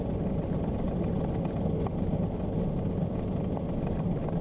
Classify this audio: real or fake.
real